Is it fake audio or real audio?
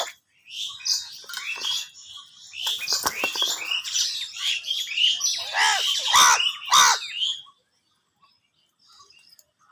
real